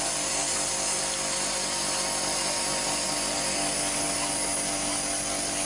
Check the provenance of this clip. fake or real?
real